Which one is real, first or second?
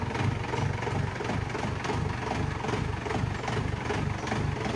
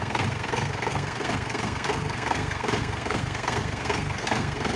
first